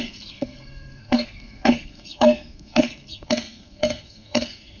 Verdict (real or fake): fake